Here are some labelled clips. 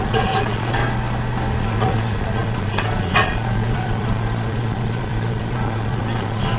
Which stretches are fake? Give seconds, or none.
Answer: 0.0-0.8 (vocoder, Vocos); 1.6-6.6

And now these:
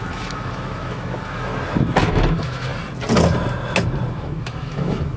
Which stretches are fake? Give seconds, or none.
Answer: 0.0-1.5 (autoencoder, DAC-VAE); 2.1-2.7; 4.1-5.2

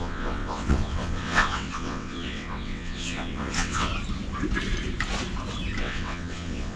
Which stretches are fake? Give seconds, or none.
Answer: 0.0-3.9 (vocoder, WaveNeXt); 5.8-6.8

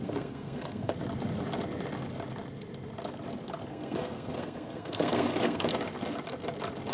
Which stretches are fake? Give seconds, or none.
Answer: 0.0-0.9 (codec, SNAC); 3.7-5.7

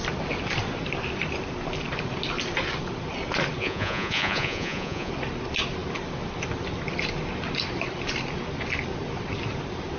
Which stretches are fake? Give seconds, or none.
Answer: 3.6-5.1 (vocoder, Vocos)

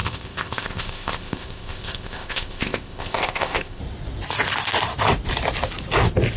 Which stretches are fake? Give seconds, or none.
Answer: 0.0-3.8 (codec, ZipCodec)

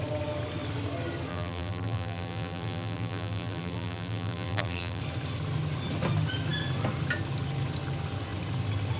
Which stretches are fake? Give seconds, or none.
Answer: 1.3-5.0 (vocoder, BigVGAN v2)